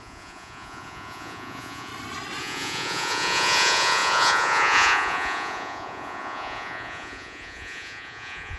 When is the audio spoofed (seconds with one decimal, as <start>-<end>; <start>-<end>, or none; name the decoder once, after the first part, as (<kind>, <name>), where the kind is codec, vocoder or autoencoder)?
0.0-1.9 (vocoder, Vocos); 2.4-8.6